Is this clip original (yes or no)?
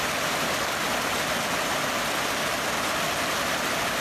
no